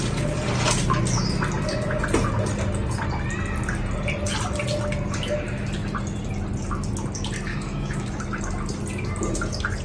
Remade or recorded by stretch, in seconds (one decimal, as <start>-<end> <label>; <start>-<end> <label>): 0.0-7.5 recorded; 7.5-8.2 remade; 8.2-9.8 recorded